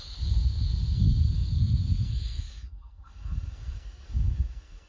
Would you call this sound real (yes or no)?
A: no